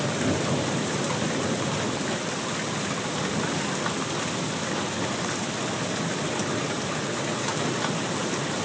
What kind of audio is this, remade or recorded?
recorded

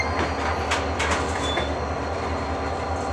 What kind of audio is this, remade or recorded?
recorded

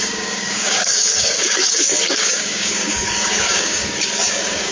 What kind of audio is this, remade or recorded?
remade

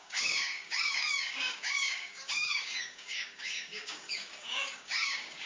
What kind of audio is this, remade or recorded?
remade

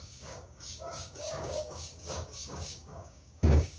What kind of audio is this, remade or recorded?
remade